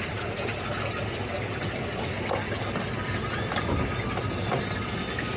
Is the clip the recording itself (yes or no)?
yes